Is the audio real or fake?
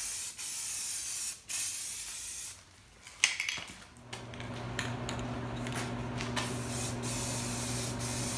real